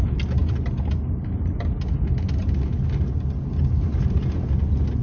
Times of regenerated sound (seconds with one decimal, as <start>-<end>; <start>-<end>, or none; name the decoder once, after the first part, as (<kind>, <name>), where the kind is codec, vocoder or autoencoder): none